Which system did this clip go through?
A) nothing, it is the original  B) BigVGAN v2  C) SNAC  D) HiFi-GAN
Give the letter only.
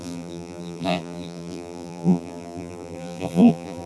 B